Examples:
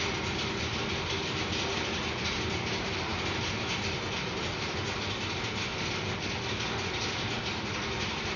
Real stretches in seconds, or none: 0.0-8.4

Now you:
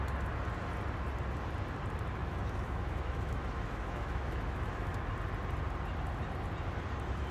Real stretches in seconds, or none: 0.0-2.2; 5.1-7.3